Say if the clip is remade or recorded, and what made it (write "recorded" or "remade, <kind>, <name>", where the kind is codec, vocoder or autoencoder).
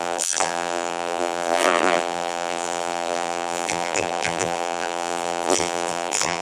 remade, vocoder, BigVGAN v2